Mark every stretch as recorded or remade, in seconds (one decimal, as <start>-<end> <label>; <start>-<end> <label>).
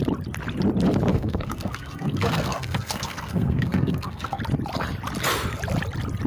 0.0-1.1 recorded; 1.1-4.4 remade; 4.4-6.3 recorded